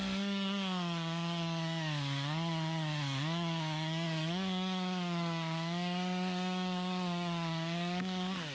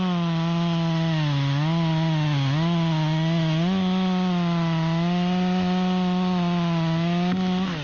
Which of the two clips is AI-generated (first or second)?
first